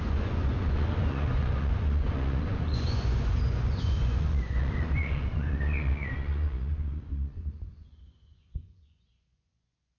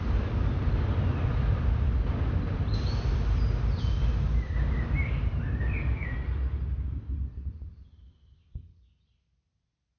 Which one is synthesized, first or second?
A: first